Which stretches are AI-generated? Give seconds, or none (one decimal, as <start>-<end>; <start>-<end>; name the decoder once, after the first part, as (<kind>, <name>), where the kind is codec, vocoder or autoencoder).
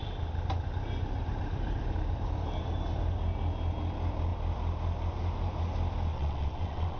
6.1-7.0 (vocoder, WaveNeXt)